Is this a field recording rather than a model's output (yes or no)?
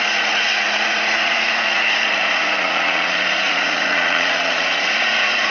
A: no